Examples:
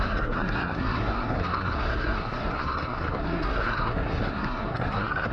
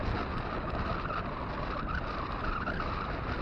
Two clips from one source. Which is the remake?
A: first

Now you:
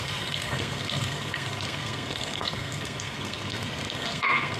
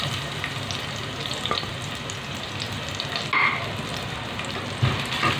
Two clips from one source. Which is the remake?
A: first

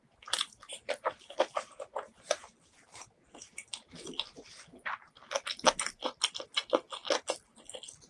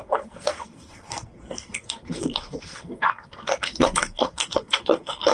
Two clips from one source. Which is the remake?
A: second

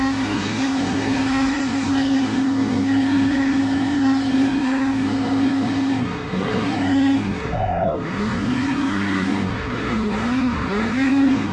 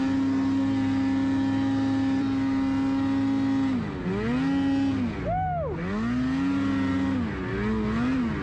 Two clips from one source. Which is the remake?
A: first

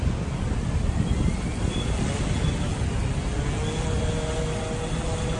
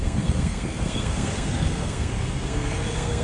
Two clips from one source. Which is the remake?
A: second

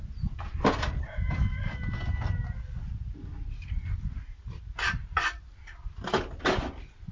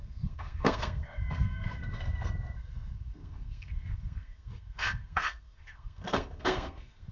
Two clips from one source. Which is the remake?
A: second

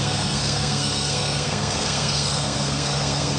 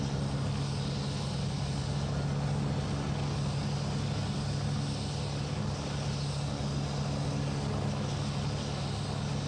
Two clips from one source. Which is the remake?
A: first